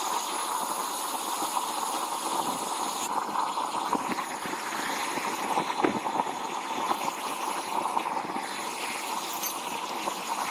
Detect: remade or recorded recorded